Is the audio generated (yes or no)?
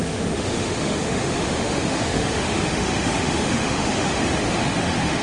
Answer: yes